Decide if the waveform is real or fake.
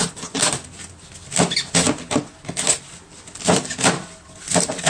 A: real